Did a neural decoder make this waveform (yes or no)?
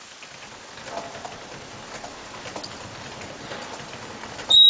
no